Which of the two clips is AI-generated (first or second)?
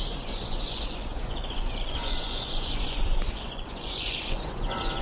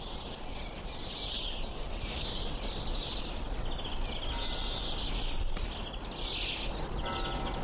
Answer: first